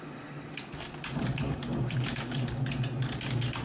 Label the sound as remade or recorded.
recorded